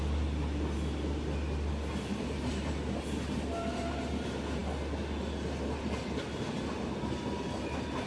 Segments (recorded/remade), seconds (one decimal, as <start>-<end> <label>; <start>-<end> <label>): 0.0-8.1 recorded